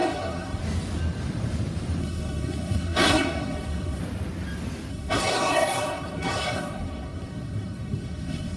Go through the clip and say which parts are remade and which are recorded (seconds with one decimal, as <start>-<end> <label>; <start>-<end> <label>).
0.0-0.6 remade; 0.6-2.0 recorded; 2.0-4.0 remade; 4.0-4.9 recorded; 4.9-8.6 remade